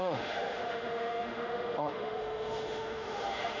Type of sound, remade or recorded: remade